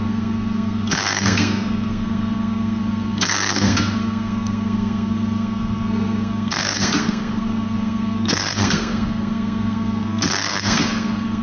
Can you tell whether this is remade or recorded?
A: remade